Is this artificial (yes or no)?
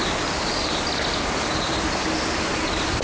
no